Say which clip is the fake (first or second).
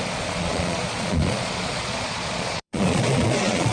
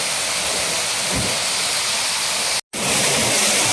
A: first